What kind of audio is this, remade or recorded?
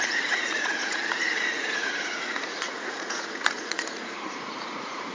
remade